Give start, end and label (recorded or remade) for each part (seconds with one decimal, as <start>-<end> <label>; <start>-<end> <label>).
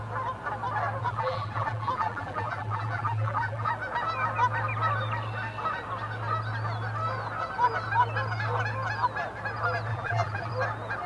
0.0-1.0 recorded; 1.0-3.7 remade; 3.7-9.9 recorded; 9.9-10.5 remade; 10.5-11.1 recorded